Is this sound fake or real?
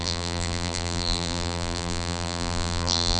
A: fake